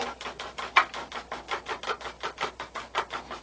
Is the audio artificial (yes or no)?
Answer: no